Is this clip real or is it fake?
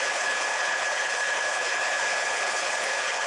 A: fake